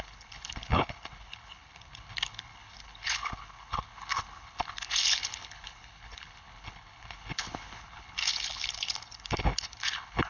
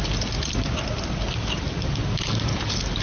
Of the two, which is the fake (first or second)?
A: first